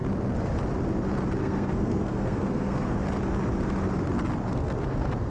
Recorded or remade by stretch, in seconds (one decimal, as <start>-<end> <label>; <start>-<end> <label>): 0.0-1.4 recorded; 1.4-3.0 remade; 3.0-4.5 recorded; 4.5-5.3 remade